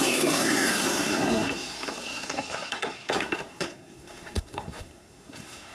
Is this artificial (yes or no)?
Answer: yes